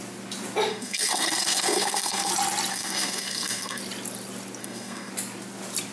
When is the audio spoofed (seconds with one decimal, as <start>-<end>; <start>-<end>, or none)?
0.7-2.3; 2.7-3.8; 4.6-5.1